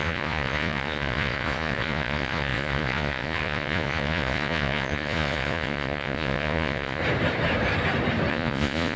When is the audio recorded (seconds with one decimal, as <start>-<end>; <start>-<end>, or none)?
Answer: 7.0-8.3